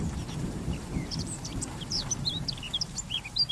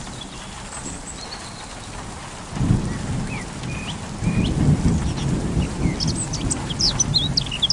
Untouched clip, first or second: second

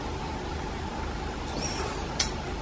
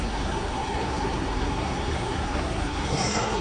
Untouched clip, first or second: first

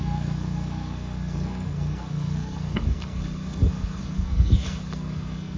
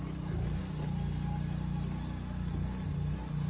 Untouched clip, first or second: second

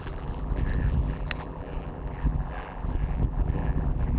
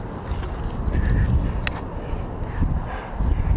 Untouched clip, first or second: second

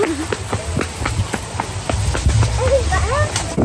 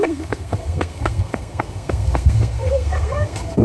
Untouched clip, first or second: first